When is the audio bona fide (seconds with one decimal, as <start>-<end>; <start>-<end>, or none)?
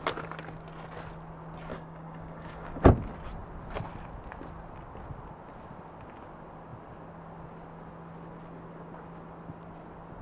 0.0-1.7; 2.8-10.2